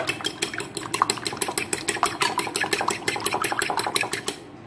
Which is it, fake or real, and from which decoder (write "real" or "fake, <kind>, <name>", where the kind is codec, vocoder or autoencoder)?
real